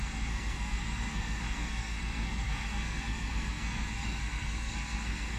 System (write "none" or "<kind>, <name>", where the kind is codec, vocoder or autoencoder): codec, SNAC